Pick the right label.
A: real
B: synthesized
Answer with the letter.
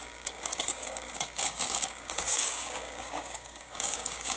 B